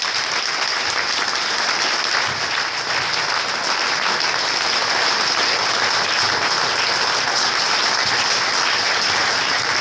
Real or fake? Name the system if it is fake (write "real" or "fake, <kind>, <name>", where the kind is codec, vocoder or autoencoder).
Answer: real